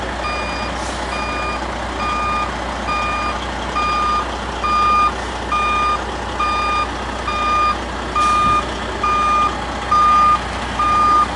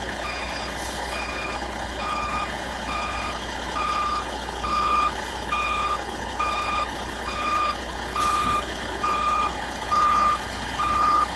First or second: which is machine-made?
second